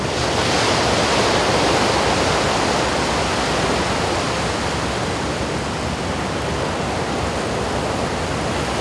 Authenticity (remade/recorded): recorded